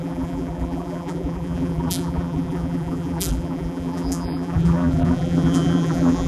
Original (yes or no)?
no